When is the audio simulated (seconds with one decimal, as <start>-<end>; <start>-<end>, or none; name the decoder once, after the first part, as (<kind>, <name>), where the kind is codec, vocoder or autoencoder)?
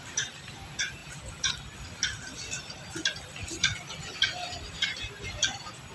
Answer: 1.0-1.5 (vocoder, Vocos)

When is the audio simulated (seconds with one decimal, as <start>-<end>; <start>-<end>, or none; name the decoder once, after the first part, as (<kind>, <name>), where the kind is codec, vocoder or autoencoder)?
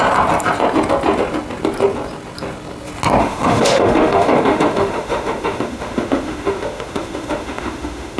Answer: 3.2-8.2 (autoencoder, DAC-VAE)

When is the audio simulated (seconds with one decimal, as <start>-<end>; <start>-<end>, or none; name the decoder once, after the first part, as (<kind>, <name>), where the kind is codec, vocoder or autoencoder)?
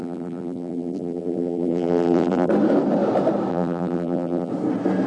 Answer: 0.0-2.5 (vocoder, BigVGAN v2); 3.5-4.5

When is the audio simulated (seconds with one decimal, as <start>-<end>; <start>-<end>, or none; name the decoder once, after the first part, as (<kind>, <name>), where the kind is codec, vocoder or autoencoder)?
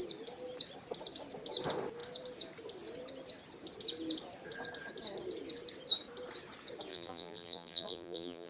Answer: 6.9-8.5 (vocoder, BigVGAN v2)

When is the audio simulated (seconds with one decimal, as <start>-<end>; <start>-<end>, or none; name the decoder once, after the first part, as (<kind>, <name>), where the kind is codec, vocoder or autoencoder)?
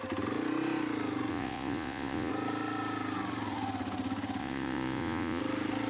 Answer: 1.3-2.3 (vocoder, Vocos); 4.4-5.4